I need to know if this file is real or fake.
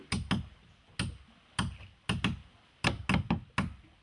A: real